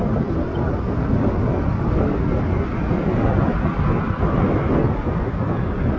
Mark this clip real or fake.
real